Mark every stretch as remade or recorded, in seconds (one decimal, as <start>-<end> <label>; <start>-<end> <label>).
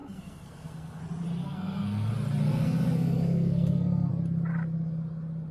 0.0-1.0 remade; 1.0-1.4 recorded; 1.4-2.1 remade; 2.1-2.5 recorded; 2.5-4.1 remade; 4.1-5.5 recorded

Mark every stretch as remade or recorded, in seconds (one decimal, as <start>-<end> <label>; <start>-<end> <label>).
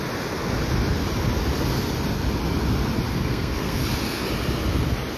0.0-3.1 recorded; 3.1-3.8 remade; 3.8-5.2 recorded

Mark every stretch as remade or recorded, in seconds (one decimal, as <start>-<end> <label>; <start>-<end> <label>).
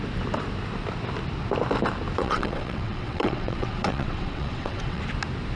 0.0-2.2 recorded; 2.2-5.0 remade; 5.0-5.6 recorded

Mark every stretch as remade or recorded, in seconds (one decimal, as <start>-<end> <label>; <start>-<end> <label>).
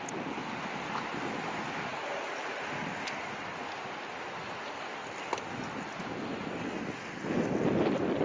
0.0-8.2 recorded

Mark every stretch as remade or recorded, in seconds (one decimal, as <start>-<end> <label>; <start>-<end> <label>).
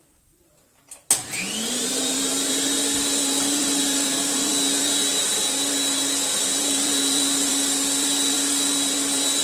0.0-9.4 remade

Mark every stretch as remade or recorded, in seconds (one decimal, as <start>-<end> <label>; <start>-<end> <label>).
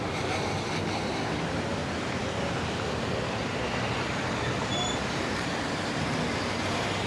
0.0-1.8 recorded; 1.8-6.1 remade; 6.1-7.1 recorded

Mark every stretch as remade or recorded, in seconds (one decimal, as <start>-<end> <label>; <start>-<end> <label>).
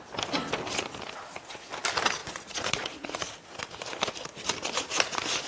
0.0-2.2 recorded; 2.2-3.3 remade; 3.3-5.5 recorded